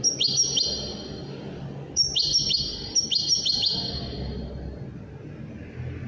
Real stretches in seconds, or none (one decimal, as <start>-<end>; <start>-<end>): 0.0-6.1